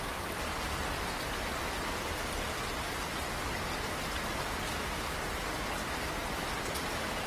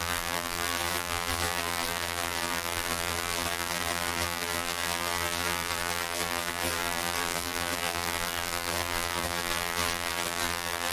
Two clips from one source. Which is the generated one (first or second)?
second